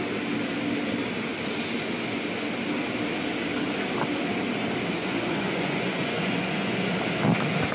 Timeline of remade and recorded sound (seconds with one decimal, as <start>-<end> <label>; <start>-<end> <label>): 0.0-5.0 recorded; 5.0-6.9 remade; 6.9-7.7 recorded